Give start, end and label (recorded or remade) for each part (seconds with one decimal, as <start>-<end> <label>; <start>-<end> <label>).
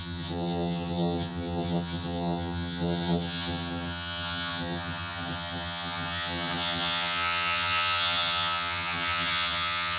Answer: 0.0-10.0 remade